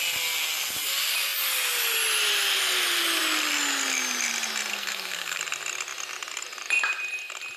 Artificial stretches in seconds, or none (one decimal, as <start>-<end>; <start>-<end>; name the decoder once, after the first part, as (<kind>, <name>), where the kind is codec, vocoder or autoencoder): 4.7-5.4 (codec, SNAC)